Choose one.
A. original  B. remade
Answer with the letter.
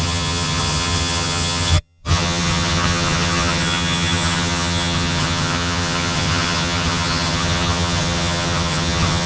B